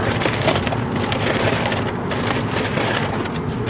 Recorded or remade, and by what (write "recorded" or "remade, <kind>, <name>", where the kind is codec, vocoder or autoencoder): recorded